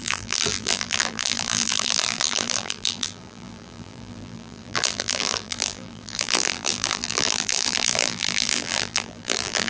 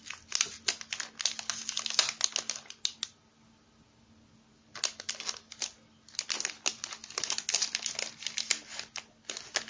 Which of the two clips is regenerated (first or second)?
first